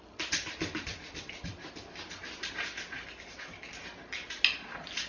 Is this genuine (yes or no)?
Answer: yes